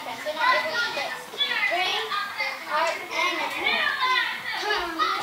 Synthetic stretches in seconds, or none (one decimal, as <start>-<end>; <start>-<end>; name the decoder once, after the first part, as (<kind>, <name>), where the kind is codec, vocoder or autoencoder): 0.0-1.0 (autoencoder, DAC-VAE)